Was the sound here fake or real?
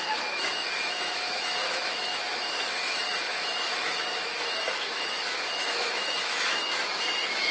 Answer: fake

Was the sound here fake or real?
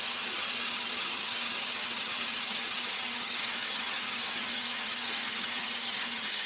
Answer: fake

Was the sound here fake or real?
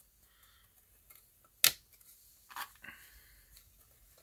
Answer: real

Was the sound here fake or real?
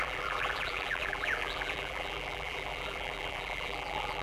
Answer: fake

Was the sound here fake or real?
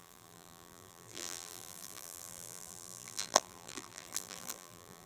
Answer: fake